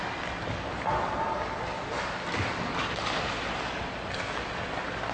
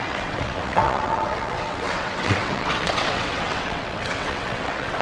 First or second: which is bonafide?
first